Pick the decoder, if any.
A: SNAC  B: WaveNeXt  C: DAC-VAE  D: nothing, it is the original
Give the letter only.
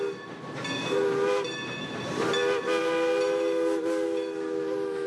D